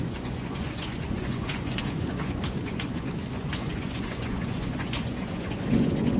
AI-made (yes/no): yes